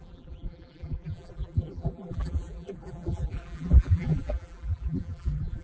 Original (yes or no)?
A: no